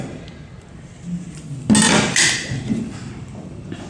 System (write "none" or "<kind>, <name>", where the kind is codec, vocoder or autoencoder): none